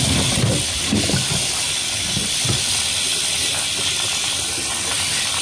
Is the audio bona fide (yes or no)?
yes